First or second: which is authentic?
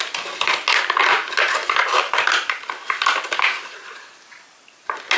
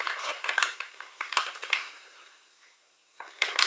first